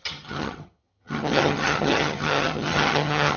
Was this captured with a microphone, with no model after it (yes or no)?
no